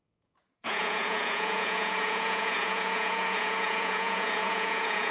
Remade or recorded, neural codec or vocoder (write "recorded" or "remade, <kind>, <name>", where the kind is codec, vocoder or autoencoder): remade, vocoder, Vocos